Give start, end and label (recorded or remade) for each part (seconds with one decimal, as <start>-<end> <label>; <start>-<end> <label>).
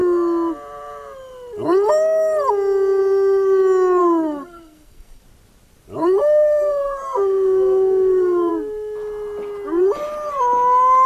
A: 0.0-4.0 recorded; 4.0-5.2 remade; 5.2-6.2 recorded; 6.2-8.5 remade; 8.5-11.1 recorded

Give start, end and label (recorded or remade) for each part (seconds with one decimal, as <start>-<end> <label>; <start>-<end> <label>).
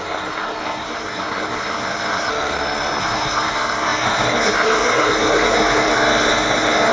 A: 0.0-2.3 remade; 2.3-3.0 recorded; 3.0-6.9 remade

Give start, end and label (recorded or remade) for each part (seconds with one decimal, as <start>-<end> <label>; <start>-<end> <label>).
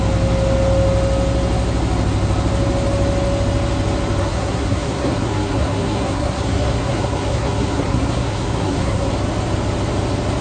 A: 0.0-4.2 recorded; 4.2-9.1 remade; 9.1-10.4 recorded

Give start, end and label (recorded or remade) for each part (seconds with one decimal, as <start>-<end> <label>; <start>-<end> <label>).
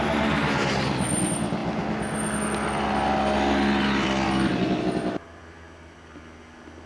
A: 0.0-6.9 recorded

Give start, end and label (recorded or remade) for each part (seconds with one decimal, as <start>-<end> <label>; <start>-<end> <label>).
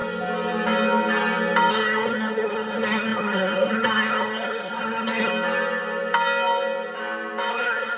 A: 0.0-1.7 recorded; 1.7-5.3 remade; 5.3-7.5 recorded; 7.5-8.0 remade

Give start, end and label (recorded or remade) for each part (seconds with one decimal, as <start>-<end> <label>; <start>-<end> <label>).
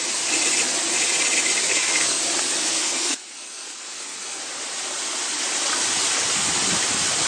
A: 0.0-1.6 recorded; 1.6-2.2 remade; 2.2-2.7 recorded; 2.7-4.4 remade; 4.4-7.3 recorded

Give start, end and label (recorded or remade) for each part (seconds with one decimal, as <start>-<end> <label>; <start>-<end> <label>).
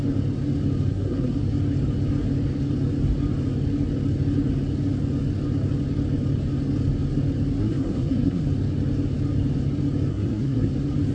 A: 0.0-0.9 recorded; 0.9-1.4 remade; 1.4-7.6 recorded; 7.6-8.5 remade; 8.5-10.1 recorded; 10.1-10.7 remade; 10.7-11.1 recorded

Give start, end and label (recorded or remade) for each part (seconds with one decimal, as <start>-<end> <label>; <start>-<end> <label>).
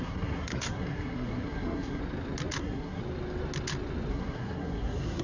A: 0.0-2.0 remade; 2.0-2.6 recorded; 2.6-3.0 remade; 3.0-4.1 recorded; 4.1-5.2 remade